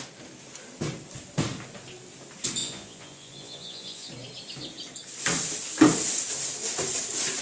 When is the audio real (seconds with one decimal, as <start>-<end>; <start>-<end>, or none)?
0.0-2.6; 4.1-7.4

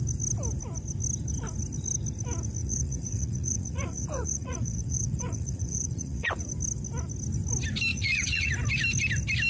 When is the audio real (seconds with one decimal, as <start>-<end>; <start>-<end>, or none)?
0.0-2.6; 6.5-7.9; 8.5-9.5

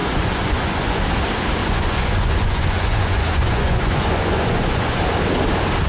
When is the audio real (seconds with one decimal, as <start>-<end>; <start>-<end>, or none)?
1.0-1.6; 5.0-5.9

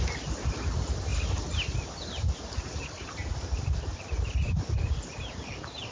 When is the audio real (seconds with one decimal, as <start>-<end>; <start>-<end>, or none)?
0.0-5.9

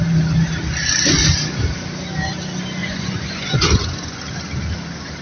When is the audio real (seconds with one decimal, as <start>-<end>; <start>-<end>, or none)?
0.0-2.8; 4.2-5.2

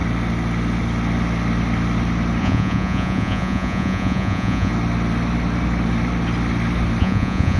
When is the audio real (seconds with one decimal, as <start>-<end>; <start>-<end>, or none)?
0.0-2.4; 4.7-7.0

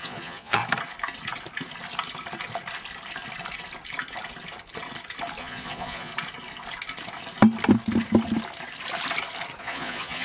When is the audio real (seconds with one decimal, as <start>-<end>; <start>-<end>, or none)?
0.6-5.4; 6.1-9.6

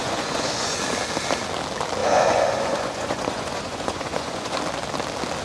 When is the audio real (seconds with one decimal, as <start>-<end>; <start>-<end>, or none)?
0.8-2.0; 4.6-5.4